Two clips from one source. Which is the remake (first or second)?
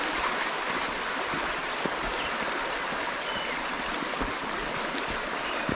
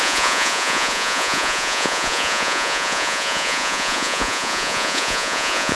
second